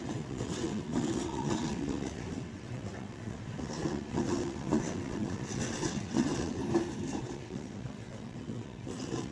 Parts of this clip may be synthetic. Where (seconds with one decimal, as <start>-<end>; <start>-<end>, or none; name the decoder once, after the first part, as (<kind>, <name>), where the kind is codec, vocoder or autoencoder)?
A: 0.0-6.6 (vocoder, WaveNeXt); 7.2-9.3

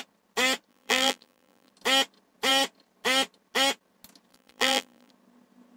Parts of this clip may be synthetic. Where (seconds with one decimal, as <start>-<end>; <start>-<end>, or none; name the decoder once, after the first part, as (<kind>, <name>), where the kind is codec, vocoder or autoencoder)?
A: 0.7-1.7 (vocoder, BigVGAN v2); 4.3-5.1

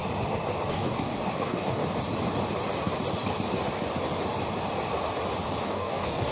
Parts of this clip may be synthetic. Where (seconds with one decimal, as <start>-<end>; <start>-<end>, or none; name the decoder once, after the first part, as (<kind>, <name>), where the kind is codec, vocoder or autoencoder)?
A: 0.7-1.8 (codec, DAC); 5.6-6.3

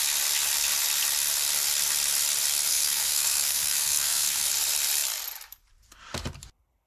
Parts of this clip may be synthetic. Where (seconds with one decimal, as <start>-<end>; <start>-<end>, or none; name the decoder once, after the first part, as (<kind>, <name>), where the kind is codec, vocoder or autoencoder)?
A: 2.7-4.5 (codec, SNAC)

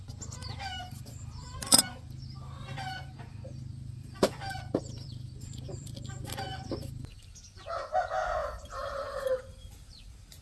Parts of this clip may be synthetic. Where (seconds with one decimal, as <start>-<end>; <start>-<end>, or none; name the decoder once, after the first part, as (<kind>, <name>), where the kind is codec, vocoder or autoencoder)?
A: 0.4-1.8 (vocoder, BigVGAN v2); 3.7-7.3; 8.4-10.0

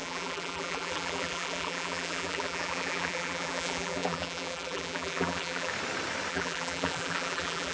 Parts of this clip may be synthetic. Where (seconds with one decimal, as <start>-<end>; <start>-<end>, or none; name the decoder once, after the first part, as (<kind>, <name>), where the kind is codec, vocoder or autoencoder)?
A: 0.0-5.7 (vocoder, BigVGAN v2); 6.3-7.7

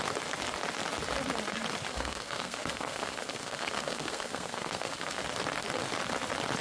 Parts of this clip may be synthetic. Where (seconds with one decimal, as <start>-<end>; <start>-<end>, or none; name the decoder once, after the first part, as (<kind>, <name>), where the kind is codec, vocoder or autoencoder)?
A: 1.9-5.2 (codec, SNAC)

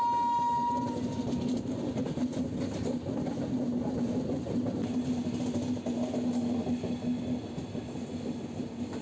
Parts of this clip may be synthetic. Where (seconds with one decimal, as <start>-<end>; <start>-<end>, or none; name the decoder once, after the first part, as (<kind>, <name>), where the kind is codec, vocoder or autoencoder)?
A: none